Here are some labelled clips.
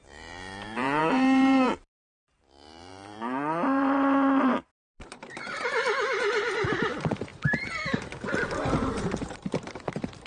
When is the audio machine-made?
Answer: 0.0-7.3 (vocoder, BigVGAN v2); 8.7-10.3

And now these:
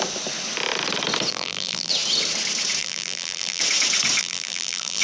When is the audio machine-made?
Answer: 1.3-1.9 (vocoder, BigVGAN v2); 2.8-3.6; 4.2-5.0

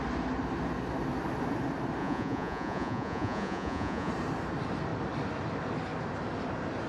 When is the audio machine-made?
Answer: 2.0-4.1 (vocoder, Vocos)

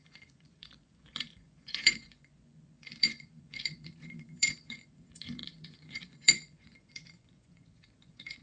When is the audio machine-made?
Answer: 0.0-8.4 (vocoder, Vocos)

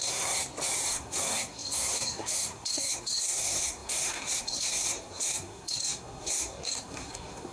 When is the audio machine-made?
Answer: 0.0-0.4 (codec, SNAC); 0.9-7.5